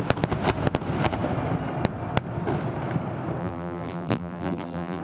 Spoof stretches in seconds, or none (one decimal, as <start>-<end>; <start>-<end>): 3.4-5.0